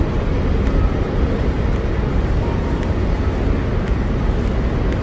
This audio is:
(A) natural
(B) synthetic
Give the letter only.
A